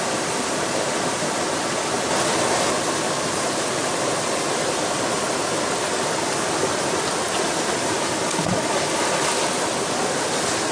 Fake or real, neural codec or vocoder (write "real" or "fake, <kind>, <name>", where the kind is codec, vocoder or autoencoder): real